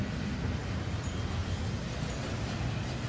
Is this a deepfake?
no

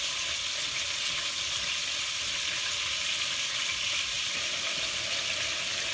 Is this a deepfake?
no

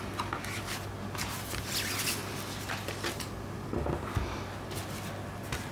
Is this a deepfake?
no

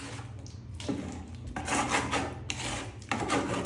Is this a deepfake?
no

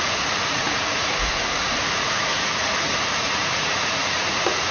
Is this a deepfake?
yes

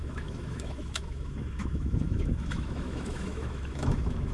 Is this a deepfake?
yes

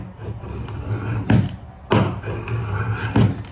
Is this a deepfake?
no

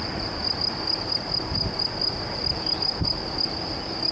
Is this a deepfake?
no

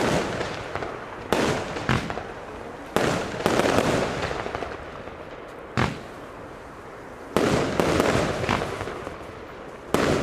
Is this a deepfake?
no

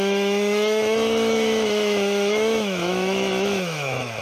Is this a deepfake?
yes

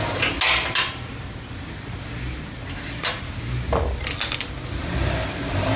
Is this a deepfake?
no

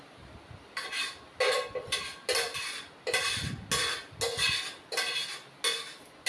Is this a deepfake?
no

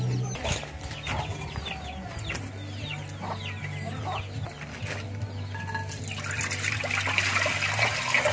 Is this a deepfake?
no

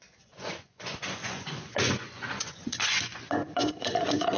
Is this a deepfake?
yes